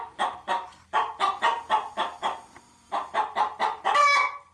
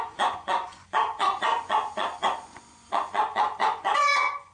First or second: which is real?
first